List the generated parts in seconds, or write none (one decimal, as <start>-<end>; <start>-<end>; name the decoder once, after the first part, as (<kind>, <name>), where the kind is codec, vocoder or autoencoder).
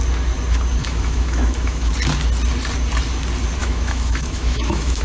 0.8-1.9 (autoencoder, DAC-VAE); 3.6-5.0